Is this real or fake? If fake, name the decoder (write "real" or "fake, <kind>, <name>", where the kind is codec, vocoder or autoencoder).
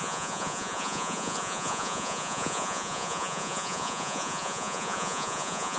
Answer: fake, vocoder, Vocos